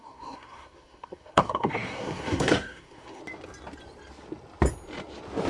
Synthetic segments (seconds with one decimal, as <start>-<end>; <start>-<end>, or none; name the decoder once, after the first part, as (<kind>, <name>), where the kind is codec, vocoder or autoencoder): 0.0-3.2 (codec, SNAC)